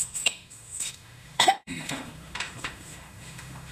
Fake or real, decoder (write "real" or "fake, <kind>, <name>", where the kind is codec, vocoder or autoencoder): fake, autoencoder, DAC-VAE